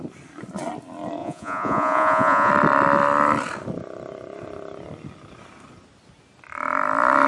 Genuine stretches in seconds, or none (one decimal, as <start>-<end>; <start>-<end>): 0.0-1.2; 2.5-7.3